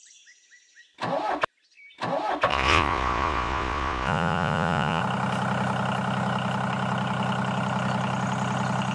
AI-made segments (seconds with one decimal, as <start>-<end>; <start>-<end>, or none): 2.5-5.0

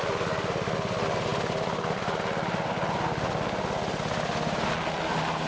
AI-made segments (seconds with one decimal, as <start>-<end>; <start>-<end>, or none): none

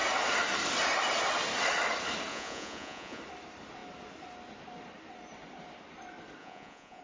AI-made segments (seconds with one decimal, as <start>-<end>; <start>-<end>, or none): 2.3-3.2; 6.4-7.0

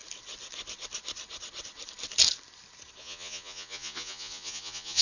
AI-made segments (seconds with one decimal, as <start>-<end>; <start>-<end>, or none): 3.0-5.0

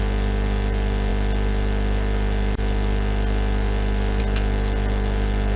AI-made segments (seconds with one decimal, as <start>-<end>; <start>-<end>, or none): none

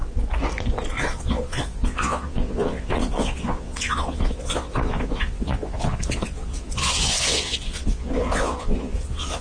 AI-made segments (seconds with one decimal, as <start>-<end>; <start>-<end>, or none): 1.0-9.4